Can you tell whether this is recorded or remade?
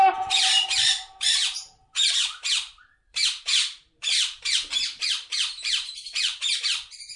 remade